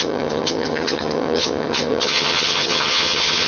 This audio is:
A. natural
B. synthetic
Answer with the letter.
B